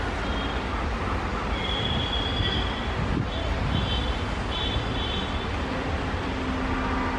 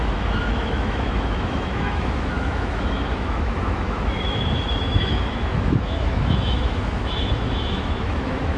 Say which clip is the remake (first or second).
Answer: second